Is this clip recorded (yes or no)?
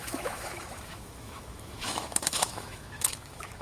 no